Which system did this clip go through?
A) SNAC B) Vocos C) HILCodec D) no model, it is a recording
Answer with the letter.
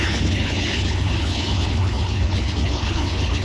C